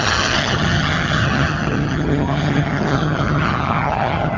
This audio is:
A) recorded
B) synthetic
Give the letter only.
B